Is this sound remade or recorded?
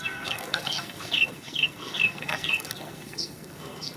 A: remade